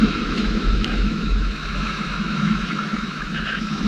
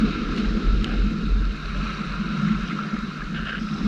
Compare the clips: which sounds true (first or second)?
second